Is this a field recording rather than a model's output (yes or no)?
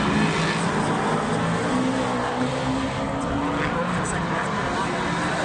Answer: yes